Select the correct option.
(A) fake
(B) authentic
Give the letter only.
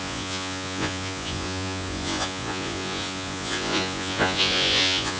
A